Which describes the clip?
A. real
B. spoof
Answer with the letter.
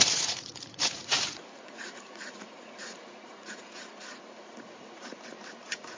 B